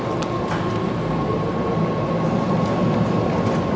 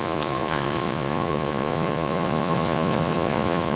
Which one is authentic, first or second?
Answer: first